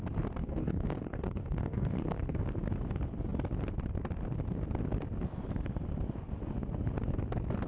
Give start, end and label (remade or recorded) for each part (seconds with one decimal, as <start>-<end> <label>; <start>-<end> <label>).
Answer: 0.0-0.4 recorded; 0.4-2.4 remade; 2.4-7.7 recorded

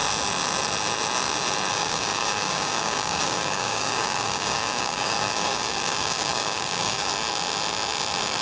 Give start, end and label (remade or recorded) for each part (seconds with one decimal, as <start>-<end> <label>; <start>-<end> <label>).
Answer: 0.0-1.7 recorded; 1.7-7.1 remade; 7.1-8.4 recorded

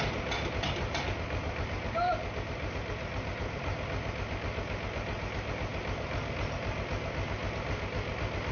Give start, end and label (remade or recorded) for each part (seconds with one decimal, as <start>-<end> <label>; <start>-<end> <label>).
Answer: 0.0-8.5 recorded

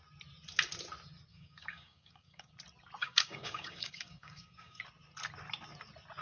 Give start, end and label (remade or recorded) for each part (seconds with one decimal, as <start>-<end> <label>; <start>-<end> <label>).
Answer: 0.0-1.3 recorded; 1.3-2.5 remade; 2.5-3.0 recorded; 3.0-4.8 remade; 4.8-6.2 recorded

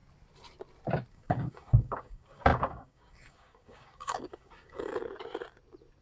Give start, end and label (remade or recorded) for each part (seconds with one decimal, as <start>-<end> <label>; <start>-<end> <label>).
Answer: 0.0-1.1 recorded; 1.1-4.9 remade; 4.9-6.0 recorded